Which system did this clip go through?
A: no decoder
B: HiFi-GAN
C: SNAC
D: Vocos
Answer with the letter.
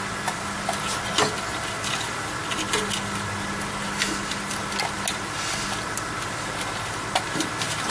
A